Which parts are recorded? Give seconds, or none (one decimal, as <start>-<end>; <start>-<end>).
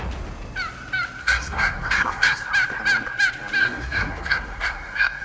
0.0-1.2; 2.5-3.6